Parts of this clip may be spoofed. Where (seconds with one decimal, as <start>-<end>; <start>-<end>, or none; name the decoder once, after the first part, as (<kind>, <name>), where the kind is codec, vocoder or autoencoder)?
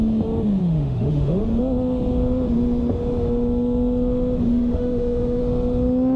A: 0.6-1.4 (autoencoder, DAC-VAE); 4.5-5.4